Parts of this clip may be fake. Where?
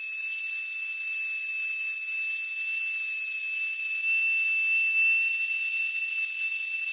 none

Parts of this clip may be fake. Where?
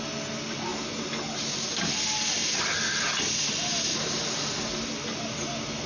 none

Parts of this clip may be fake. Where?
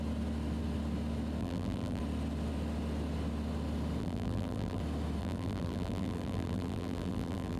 1.4-2.0; 4.0-4.8; 5.2-7.6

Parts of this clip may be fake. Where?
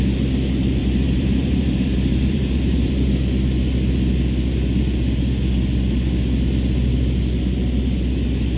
0.8-2.9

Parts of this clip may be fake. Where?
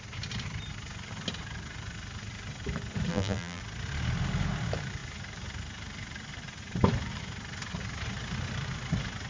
3.1-3.6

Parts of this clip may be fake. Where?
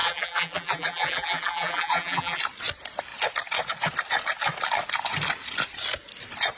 0.0-2.4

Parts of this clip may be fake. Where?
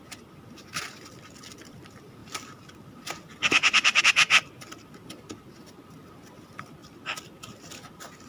0.0-8.3